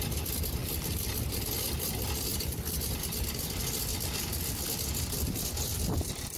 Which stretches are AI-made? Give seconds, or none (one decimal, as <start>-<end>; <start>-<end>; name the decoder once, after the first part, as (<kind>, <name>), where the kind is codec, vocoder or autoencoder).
0.6-1.3 (vocoder, BigVGAN v2); 2.3-6.4